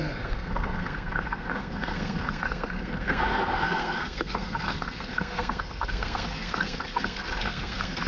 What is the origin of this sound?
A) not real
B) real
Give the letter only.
A